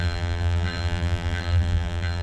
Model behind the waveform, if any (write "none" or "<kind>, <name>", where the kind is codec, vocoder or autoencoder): vocoder, BigVGAN v2